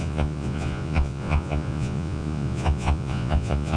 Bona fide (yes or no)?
no